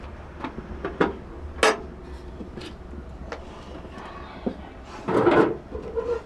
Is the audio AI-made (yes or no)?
no